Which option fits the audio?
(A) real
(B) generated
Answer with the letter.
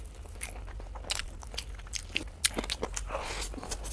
A